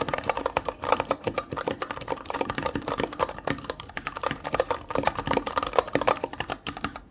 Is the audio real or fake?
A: fake